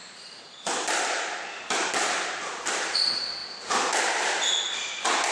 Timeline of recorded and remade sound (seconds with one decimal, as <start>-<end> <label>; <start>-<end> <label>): 0.0-5.3 recorded